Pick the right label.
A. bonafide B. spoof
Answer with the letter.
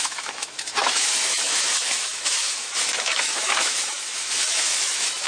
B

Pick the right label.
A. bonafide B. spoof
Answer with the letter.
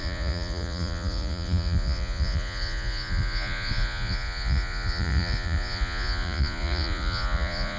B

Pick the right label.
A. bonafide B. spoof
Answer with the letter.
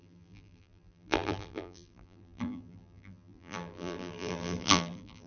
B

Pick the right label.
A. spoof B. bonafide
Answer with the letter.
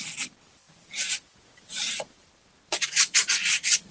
B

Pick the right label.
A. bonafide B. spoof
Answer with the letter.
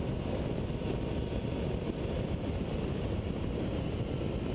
A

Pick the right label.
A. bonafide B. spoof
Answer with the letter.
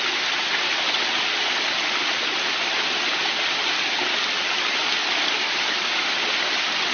A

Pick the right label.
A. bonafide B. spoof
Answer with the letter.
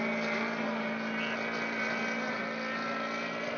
A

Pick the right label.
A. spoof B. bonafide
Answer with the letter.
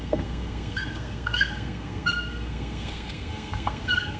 A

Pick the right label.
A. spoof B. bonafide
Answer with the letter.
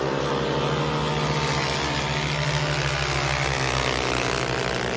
B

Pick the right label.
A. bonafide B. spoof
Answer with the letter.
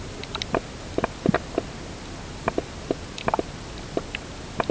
A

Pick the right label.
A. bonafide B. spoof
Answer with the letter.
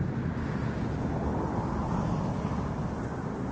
A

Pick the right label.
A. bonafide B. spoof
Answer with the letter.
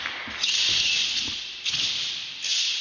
A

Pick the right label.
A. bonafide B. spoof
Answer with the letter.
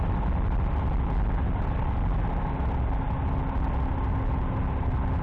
A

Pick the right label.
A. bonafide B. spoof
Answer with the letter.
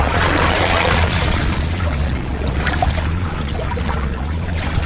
B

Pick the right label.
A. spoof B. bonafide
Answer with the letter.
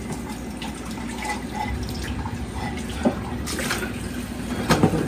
B